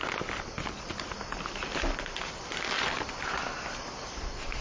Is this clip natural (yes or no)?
yes